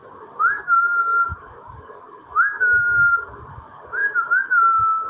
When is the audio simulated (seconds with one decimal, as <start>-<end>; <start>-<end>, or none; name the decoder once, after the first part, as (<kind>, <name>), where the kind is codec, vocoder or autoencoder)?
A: 0.6-4.0 (codec, DAC)